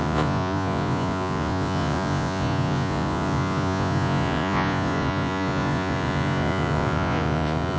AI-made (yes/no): yes